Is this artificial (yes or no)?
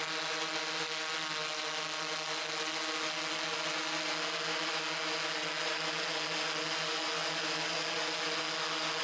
no